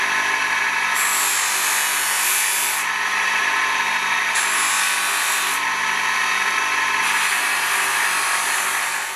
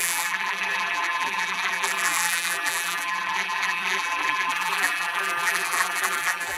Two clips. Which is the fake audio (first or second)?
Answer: second